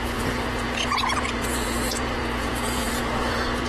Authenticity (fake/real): fake